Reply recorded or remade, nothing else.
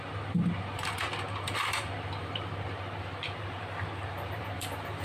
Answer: remade